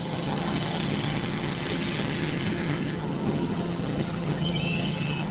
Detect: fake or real fake